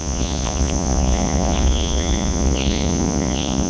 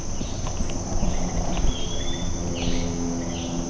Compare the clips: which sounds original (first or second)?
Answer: second